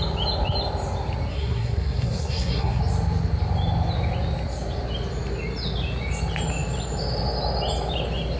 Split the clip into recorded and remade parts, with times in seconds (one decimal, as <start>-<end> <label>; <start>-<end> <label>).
0.0-1.3 recorded; 1.3-2.8 remade; 2.8-8.4 recorded